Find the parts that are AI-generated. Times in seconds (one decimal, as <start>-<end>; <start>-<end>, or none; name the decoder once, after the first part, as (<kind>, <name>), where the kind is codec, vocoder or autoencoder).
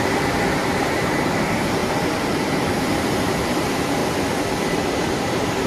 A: 0.0-4.0 (vocoder, BigVGAN v2); 5.2-5.7